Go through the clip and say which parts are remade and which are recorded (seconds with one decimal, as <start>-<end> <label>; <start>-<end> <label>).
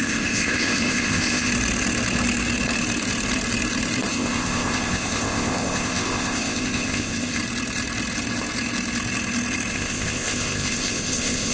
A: 0.0-1.5 remade; 1.5-4.1 recorded; 4.1-7.4 remade; 7.4-9.7 recorded; 9.7-11.5 remade